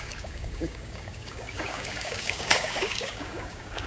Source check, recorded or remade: remade